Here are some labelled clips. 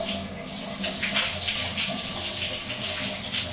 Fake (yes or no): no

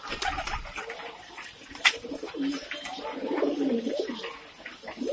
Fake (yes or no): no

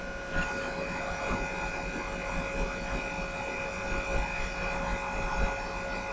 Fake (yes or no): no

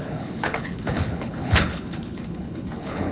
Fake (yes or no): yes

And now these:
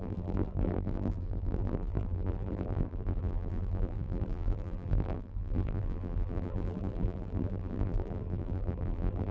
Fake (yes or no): yes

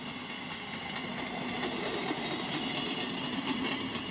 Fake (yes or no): no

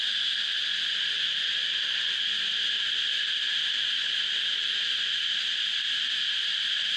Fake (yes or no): no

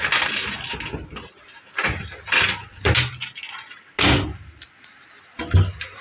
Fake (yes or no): no